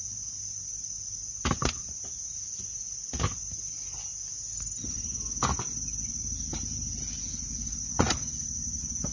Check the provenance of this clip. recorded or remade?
recorded